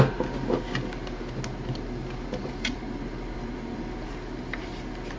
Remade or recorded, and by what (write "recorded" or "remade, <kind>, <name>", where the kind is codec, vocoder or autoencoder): recorded